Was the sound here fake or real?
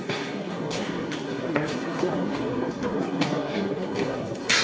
fake